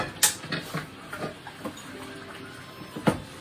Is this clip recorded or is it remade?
recorded